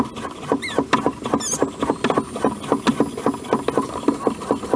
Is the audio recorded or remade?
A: recorded